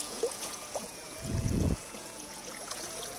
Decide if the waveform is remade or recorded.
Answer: remade